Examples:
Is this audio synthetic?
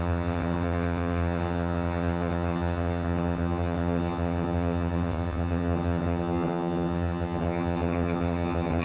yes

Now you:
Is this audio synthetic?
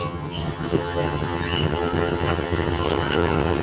yes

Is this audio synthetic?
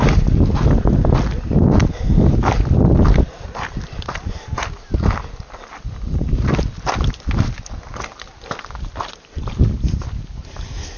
no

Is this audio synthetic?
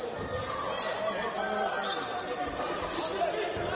no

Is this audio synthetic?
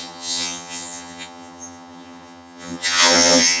yes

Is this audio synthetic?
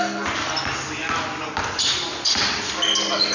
no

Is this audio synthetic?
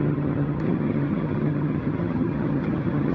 yes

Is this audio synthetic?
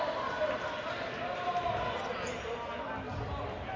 no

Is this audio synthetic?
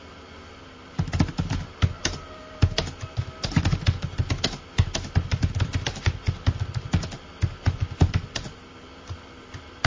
no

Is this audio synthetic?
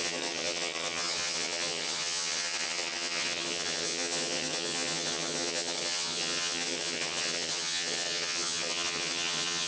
yes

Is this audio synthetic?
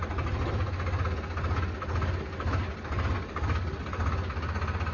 no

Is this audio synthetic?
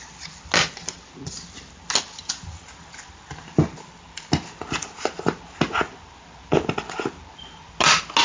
no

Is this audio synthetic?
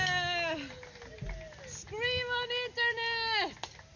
no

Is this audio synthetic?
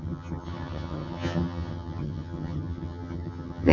yes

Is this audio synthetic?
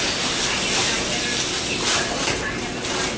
no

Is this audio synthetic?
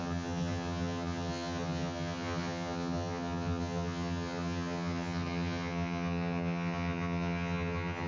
yes